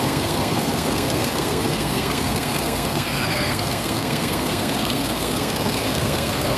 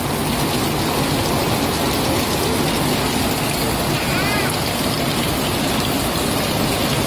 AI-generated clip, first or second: first